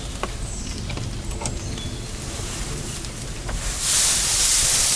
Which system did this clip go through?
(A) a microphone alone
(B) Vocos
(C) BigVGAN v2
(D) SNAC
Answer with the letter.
A